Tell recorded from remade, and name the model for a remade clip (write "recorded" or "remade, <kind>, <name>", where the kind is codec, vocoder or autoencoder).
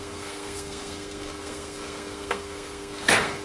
remade, codec, SNAC